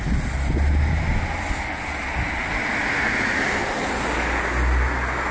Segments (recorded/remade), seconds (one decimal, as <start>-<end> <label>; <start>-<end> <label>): 0.0-5.3 recorded